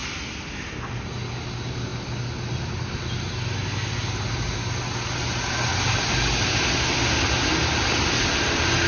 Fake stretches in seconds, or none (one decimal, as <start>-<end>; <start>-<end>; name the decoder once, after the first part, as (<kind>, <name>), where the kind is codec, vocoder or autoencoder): none